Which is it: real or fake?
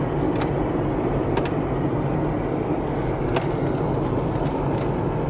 real